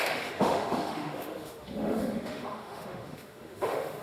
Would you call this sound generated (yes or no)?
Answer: yes